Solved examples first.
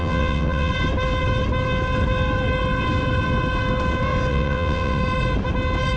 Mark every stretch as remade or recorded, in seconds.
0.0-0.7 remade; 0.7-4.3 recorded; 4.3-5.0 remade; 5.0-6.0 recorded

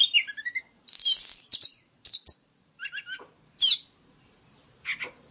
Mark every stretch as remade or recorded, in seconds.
0.0-5.3 recorded

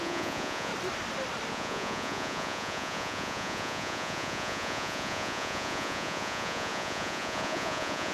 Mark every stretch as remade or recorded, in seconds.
0.0-0.7 remade; 0.7-1.5 recorded; 1.5-8.1 remade

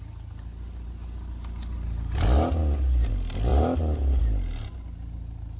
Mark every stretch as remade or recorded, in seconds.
0.0-5.6 recorded

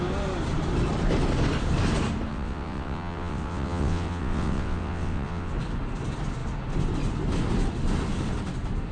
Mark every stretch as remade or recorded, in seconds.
0.0-2.3 recorded; 2.3-5.5 remade; 5.5-8.9 recorded

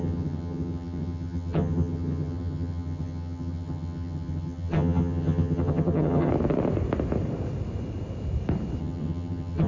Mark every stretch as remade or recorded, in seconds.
0.0-6.3 remade; 6.3-8.8 recorded; 8.8-9.7 remade

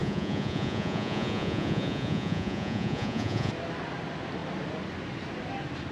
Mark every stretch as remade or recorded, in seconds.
0.0-3.5 remade; 3.5-5.9 recorded